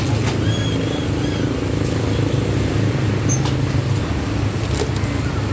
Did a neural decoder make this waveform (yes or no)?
no